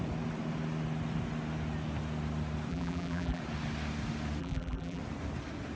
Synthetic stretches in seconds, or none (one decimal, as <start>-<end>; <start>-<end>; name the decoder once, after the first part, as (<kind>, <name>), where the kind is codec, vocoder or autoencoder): 2.7-3.4 (vocoder, BigVGAN v2); 4.4-5.0